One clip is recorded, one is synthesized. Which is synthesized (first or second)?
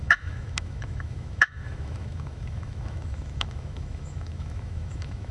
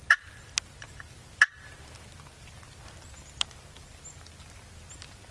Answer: first